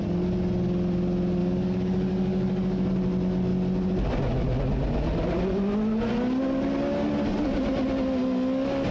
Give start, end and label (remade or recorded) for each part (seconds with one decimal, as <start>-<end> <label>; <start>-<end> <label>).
0.0-1.4 recorded; 1.4-2.9 remade; 2.9-8.9 recorded